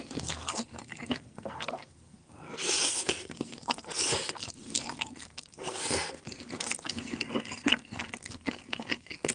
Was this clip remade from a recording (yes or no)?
yes